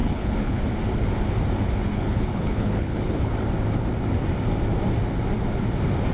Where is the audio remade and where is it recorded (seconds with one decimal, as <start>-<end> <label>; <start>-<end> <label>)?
0.0-0.6 remade; 0.6-1.9 recorded; 1.9-3.3 remade; 3.3-6.1 recorded